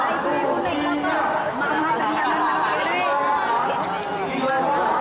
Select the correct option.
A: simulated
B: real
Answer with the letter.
B